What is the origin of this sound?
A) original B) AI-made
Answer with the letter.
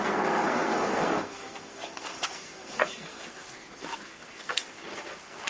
B